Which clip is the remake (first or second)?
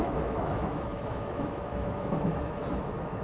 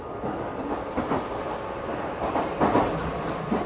first